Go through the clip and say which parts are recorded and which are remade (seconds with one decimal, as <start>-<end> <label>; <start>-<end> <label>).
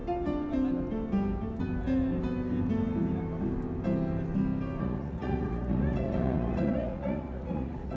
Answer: 0.0-4.8 recorded; 4.8-8.0 remade